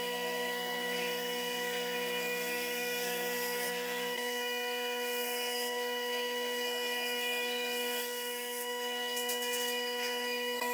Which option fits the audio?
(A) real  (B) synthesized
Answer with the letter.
B